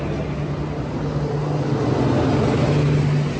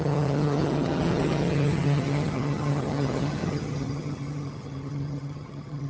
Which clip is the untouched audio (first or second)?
first